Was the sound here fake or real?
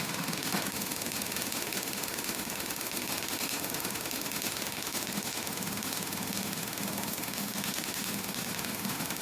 fake